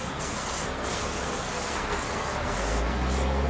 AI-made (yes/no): yes